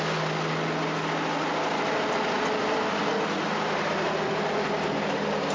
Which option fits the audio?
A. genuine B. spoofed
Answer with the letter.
A